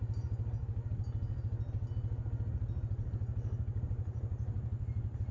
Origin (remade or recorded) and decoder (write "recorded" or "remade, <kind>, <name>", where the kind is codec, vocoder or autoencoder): recorded